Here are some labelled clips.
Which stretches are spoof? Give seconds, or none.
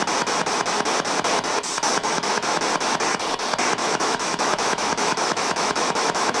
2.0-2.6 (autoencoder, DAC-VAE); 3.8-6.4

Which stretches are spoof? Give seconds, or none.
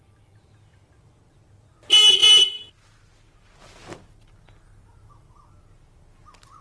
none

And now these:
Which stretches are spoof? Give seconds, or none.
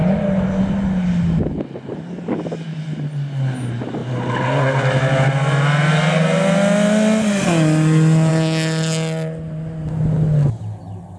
none